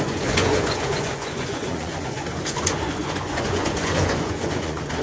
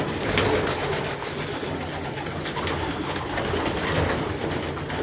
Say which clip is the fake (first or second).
first